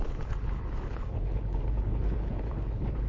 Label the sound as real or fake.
fake